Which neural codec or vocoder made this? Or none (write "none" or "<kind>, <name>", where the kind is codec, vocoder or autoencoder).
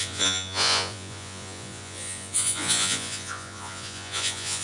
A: vocoder, Vocos